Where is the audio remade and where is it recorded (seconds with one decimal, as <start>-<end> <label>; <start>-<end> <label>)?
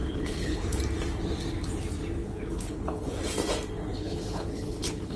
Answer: 0.0-0.8 remade; 0.8-2.2 recorded; 2.2-3.2 remade; 3.2-3.9 recorded; 3.9-5.2 remade